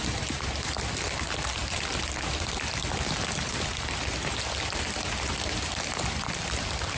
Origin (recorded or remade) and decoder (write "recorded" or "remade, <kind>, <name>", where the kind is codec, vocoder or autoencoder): recorded